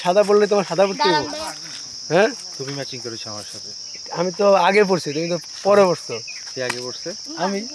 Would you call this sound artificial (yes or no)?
no